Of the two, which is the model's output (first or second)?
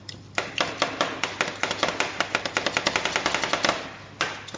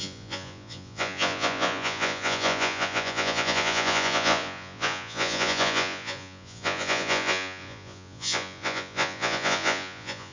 second